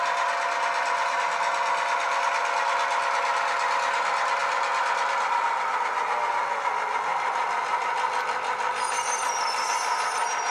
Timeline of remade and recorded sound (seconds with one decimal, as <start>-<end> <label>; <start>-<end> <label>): 0.0-7.1 recorded; 7.1-9.7 remade; 9.7-10.5 recorded